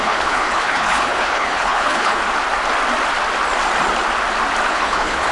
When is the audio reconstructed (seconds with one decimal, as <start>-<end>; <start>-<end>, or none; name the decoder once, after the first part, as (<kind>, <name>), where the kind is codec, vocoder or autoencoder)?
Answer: 0.0-2.2 (codec, HILCodec); 4.7-5.3